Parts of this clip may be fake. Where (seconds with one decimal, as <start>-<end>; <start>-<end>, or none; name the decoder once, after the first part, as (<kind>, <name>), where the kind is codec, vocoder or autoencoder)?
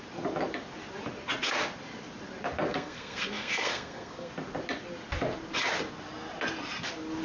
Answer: 2.7-4.3 (codec, SNAC)